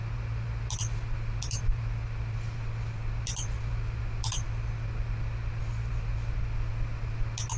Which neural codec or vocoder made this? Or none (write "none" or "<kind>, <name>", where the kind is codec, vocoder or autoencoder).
none